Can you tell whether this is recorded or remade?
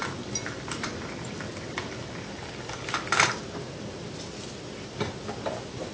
recorded